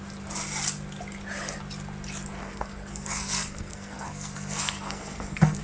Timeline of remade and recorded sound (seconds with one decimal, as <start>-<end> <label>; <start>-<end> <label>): 0.0-2.4 recorded; 2.4-5.6 remade